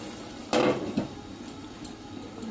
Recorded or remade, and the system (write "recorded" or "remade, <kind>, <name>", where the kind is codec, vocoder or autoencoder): recorded